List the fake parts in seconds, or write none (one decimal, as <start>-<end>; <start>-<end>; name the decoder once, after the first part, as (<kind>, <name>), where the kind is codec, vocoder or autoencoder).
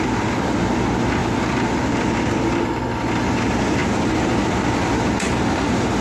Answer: none